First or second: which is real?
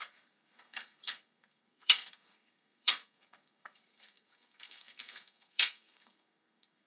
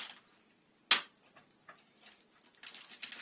second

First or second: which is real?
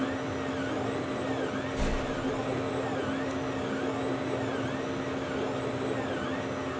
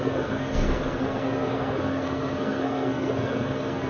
first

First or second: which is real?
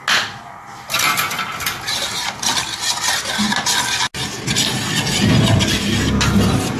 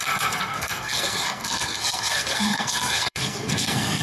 first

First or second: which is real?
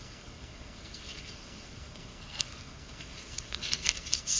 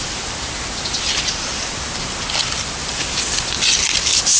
second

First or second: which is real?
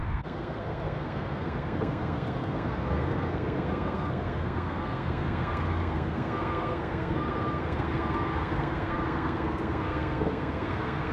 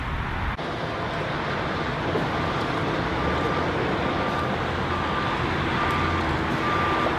second